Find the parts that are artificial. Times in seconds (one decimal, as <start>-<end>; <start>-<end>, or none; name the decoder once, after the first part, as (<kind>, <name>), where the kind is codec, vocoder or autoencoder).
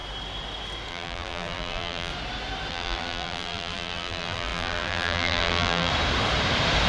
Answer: 0.9-2.1 (vocoder, BigVGAN v2); 2.7-5.9